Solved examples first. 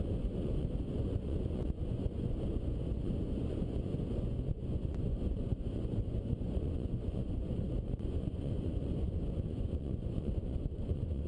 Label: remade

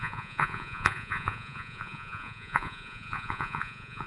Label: remade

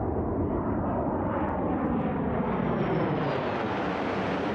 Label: recorded